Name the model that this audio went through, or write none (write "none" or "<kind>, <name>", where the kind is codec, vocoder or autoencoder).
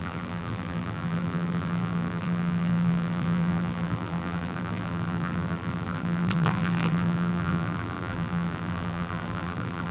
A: vocoder, BigVGAN v2